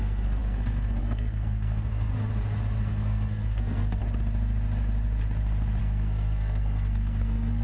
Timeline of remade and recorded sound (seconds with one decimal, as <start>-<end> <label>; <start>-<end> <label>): 0.0-2.1 remade; 2.1-2.8 recorded; 2.8-4.0 remade; 4.0-5.8 recorded; 5.8-7.6 remade